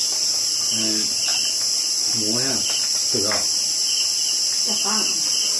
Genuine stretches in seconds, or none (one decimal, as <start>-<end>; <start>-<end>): 0.0-5.6